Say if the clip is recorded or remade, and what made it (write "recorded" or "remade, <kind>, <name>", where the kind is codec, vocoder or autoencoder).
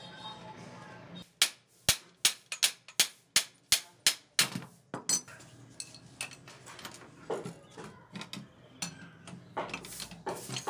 recorded